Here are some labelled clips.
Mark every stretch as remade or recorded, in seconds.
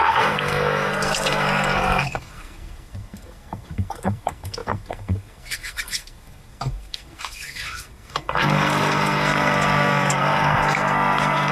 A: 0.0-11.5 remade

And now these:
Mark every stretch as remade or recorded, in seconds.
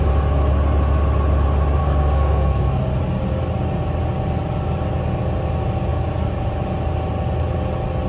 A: 0.0-1.8 recorded; 1.8-2.8 remade; 2.8-8.1 recorded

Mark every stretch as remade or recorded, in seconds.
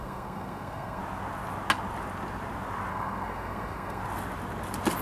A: 0.0-1.0 remade; 1.0-2.9 recorded; 2.9-4.0 remade; 4.0-5.0 recorded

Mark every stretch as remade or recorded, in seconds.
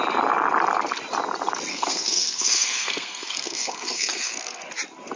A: 0.0-1.7 recorded; 1.7-4.6 remade; 4.6-5.2 recorded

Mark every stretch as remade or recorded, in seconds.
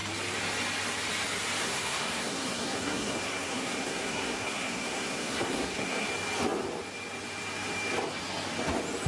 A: 0.0-1.6 recorded; 1.6-6.1 remade; 6.1-9.1 recorded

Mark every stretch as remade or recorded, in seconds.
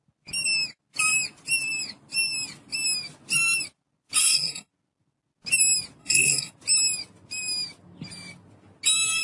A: 0.0-4.2 recorded; 4.2-4.7 remade; 4.7-6.0 recorded; 6.0-6.5 remade; 6.5-9.2 recorded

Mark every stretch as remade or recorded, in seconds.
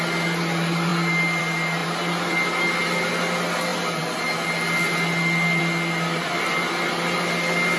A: 0.0-7.8 recorded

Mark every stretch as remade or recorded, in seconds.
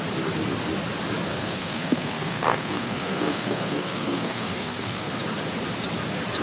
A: 0.0-1.3 recorded; 1.3-5.1 remade; 5.1-6.4 recorded